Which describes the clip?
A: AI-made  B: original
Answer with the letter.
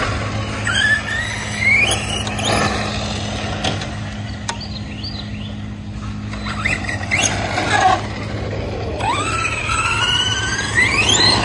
B